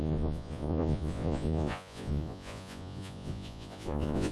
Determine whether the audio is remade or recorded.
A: remade